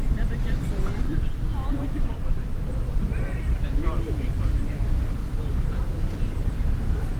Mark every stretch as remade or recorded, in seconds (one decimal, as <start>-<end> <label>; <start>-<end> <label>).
0.0-1.5 remade; 1.5-2.0 recorded; 2.0-5.2 remade; 5.2-6.7 recorded; 6.7-7.2 remade